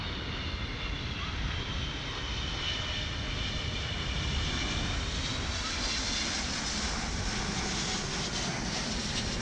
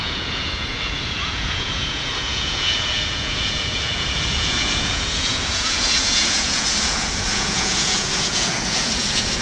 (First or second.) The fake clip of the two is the second